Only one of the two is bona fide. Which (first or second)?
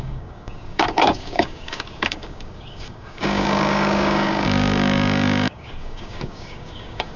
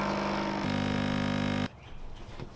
second